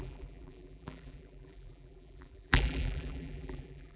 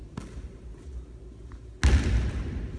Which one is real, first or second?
second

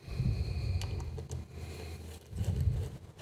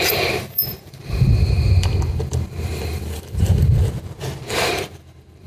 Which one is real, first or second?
first